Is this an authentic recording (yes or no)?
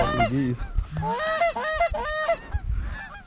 yes